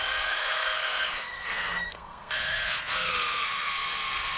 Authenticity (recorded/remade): remade